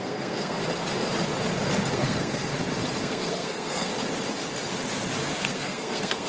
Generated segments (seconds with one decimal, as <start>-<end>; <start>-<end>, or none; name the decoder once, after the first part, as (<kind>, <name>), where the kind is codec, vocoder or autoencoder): 0.0-0.6 (codec, SNAC); 1.9-2.5; 3.0-3.9; 5.4-6.3